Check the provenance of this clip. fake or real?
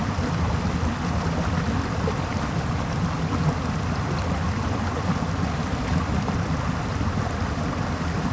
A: real